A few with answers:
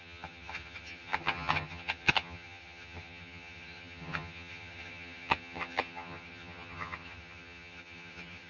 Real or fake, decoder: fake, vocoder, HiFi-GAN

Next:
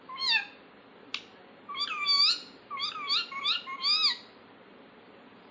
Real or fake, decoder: real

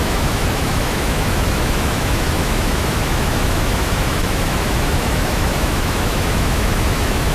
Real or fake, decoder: fake, autoencoder, DAC-VAE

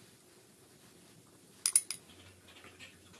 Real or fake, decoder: real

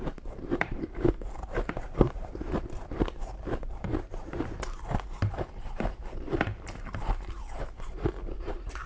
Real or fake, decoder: fake, vocoder, BigVGAN v2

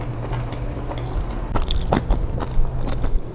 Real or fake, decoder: real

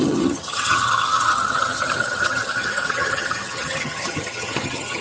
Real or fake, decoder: fake, vocoder, HiFi-GAN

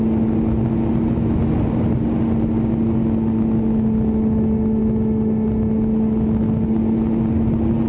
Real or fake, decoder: real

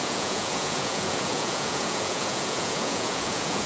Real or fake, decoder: fake, vocoder, Vocos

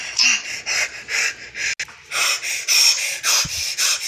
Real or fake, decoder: real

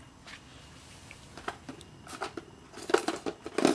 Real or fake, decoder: real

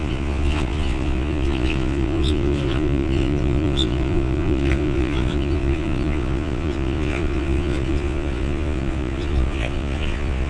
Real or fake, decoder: fake, vocoder, Vocos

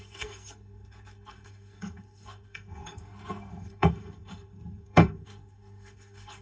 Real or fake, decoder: fake, codec, SNAC